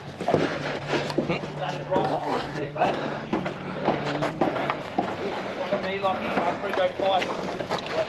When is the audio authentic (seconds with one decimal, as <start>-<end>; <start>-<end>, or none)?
0.0-2.1; 2.9-8.1